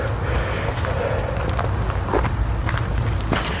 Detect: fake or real real